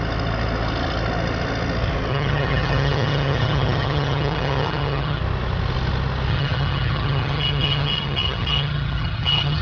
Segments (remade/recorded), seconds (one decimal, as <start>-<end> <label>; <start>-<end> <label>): 0.0-2.1 recorded; 2.1-5.2 remade; 5.2-6.3 recorded; 6.3-9.6 remade